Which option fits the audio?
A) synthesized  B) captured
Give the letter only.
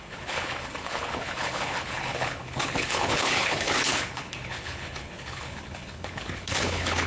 A